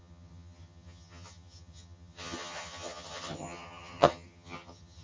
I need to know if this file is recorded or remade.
remade